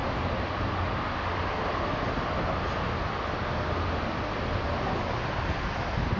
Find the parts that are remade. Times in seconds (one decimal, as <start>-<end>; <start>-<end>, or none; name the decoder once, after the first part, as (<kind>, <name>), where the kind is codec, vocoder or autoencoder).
none